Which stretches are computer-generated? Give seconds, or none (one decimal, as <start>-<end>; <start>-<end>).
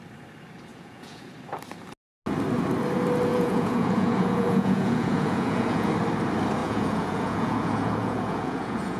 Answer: 0.7-1.3; 3.3-5.9; 6.6-9.0